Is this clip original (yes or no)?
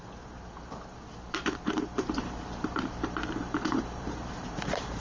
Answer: no